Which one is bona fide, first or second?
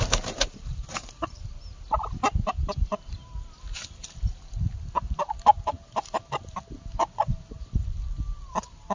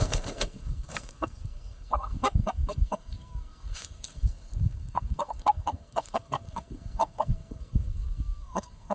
first